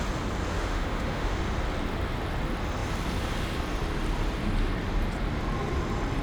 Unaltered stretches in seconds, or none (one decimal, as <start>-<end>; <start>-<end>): 0.0-0.5; 1.4-6.2